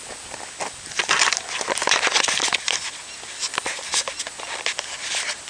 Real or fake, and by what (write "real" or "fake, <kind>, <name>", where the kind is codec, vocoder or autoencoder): real